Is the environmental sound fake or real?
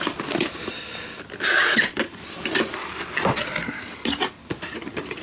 real